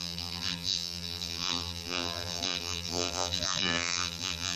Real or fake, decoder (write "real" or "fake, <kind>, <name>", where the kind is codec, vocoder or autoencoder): fake, vocoder, BigVGAN v2